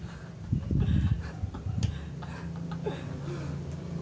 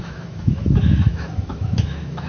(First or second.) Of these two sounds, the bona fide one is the first